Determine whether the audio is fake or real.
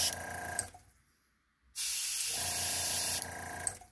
real